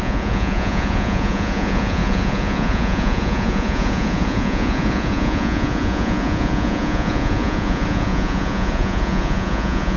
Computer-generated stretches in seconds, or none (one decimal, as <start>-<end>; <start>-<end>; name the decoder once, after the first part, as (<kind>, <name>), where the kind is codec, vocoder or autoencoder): 0.0-10.0 (vocoder, Vocos)